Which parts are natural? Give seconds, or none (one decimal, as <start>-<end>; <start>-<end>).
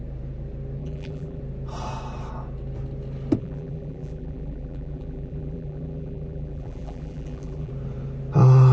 0.0-0.8; 1.4-3.4; 7.7-8.7